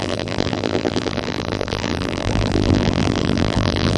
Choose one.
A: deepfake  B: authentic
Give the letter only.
A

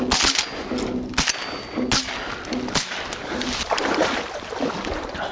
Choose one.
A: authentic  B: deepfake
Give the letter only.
A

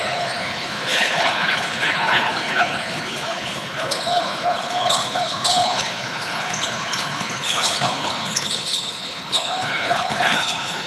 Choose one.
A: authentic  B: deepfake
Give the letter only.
B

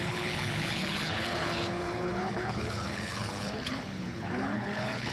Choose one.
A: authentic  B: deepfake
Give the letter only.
B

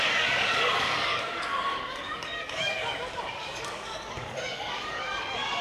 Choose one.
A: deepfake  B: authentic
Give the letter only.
A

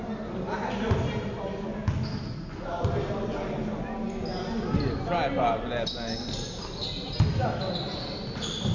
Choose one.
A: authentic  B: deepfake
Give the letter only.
A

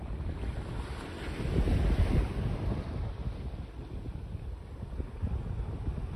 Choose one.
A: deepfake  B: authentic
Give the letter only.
B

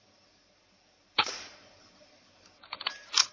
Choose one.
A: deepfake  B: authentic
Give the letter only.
A